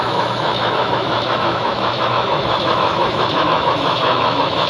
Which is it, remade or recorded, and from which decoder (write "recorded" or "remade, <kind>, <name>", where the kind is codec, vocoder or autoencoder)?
remade, autoencoder, DAC-VAE